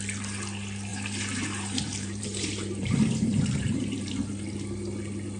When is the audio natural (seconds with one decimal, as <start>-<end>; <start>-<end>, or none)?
0.0-0.9; 4.1-5.4